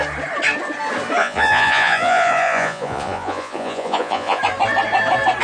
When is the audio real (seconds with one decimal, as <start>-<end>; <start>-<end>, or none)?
0.0-1.2; 4.4-5.4